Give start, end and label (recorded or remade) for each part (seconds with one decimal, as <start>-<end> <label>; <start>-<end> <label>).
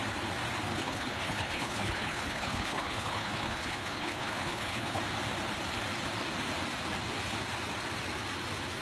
0.0-0.7 recorded; 0.7-5.0 remade; 5.0-8.8 recorded